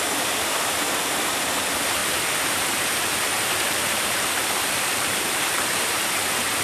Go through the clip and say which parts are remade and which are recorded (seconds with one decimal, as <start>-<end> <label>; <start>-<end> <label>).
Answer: 0.0-6.6 remade